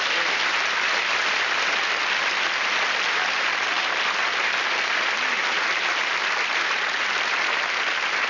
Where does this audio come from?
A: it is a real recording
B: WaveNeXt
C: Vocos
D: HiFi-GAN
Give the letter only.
A